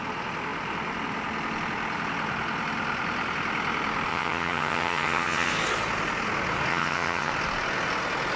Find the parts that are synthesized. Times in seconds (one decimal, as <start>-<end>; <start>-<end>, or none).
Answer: 4.1-5.5; 6.7-7.3